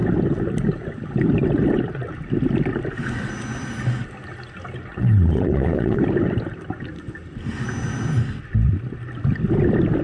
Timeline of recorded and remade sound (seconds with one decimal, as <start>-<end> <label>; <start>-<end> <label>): 0.0-4.9 recorded; 4.9-6.0 remade; 6.0-10.0 recorded